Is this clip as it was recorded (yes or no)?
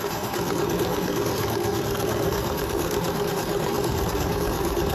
no